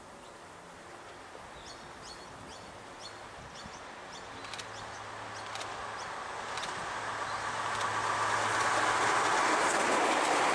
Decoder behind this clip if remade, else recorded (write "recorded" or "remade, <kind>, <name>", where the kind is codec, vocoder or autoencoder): recorded